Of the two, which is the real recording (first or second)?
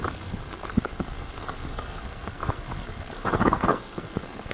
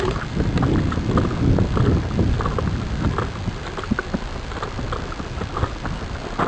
second